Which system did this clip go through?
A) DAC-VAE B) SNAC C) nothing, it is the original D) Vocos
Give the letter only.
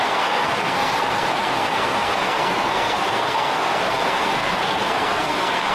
B